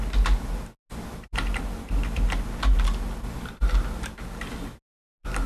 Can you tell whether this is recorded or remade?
recorded